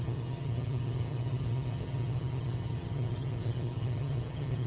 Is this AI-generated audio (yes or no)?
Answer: yes